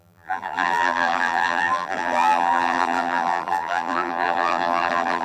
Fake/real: fake